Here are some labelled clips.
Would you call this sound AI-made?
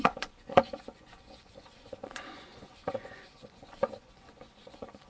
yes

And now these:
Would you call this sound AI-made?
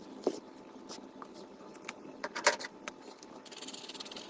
no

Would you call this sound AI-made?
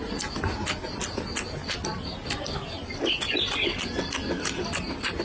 no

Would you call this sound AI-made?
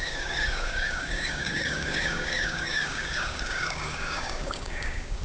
yes